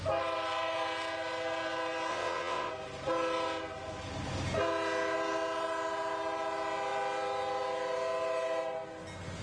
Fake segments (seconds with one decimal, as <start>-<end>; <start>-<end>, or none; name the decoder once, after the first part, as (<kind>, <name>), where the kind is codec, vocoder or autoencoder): 2.1-2.7 (vocoder, WaveNeXt)